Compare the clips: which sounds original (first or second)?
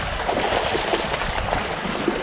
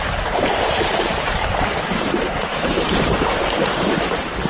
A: first